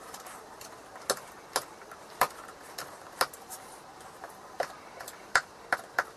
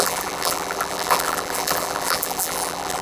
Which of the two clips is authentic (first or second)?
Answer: first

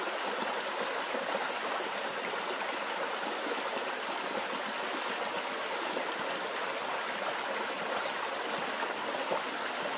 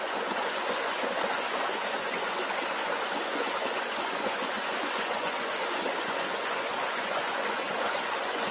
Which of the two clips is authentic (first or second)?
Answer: first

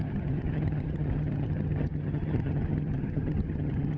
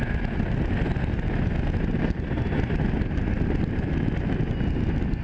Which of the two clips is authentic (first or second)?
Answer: second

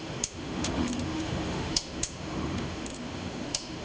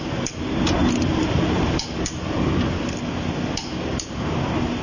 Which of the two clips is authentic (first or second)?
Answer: second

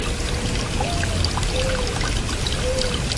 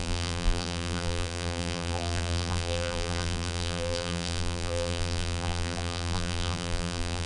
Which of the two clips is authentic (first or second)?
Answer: first